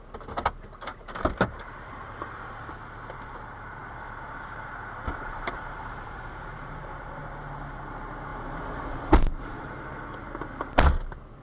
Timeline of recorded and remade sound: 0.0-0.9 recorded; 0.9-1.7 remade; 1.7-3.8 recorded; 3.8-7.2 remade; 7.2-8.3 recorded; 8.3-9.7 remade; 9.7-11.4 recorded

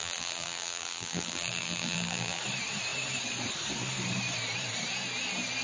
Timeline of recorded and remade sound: 0.0-2.4 remade; 2.4-5.6 recorded

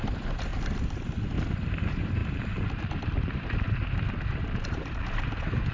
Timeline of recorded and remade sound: 0.0-0.5 remade; 0.5-1.6 recorded; 1.6-2.2 remade; 2.2-2.9 recorded; 2.9-3.8 remade; 3.8-4.3 recorded; 4.3-5.7 remade

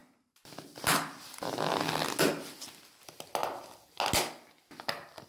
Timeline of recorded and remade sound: 0.0-5.3 recorded

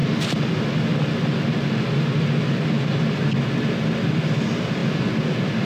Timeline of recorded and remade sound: 0.0-5.6 recorded

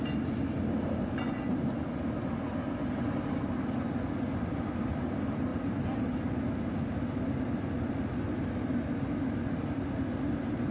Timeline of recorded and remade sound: 0.0-10.7 recorded